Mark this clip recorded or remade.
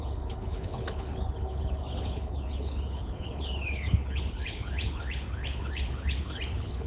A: remade